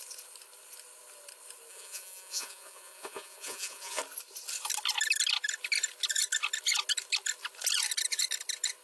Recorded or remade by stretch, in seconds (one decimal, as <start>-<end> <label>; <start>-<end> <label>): 0.0-1.7 recorded; 1.7-4.0 remade; 4.0-8.8 recorded